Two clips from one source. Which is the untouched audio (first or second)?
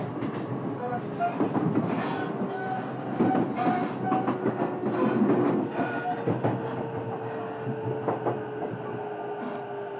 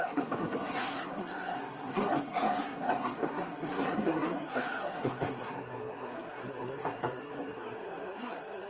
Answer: first